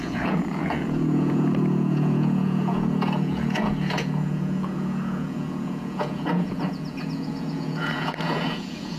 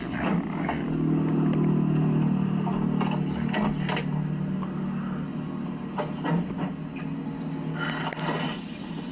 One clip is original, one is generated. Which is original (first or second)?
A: second